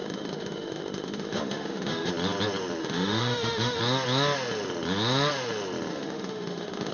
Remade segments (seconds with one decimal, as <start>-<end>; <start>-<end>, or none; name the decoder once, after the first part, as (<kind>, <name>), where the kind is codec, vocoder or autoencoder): 0.0-2.1 (autoencoder, DAC-VAE); 2.8-3.8; 5.9-6.9